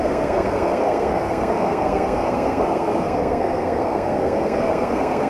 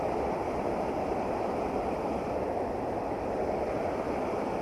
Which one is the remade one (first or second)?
first